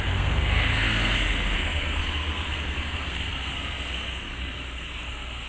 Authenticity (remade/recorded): remade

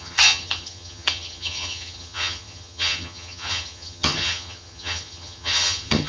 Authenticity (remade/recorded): remade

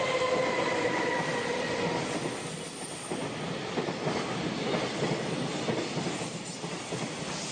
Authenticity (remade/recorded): recorded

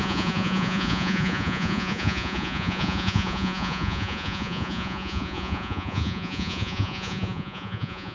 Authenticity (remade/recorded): remade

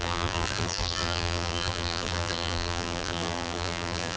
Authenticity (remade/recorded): remade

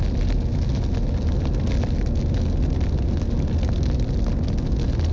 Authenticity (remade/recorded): recorded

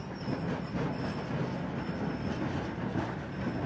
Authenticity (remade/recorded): recorded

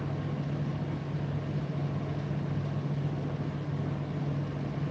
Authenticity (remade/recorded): recorded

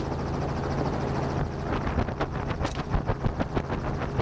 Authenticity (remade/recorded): recorded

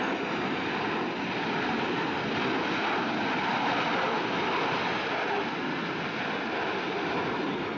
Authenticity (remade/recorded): recorded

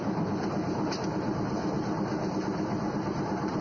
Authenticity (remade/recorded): recorded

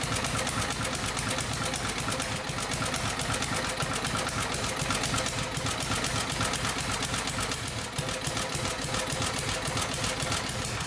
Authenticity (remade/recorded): recorded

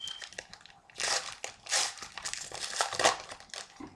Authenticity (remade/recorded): recorded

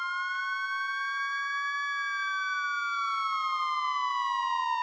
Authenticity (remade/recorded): recorded